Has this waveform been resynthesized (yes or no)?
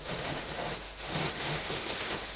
yes